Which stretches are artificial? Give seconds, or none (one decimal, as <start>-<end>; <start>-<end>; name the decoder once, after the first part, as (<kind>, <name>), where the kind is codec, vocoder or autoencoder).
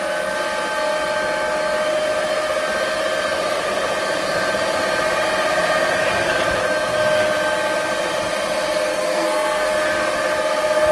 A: 8.9-9.7 (codec, SNAC)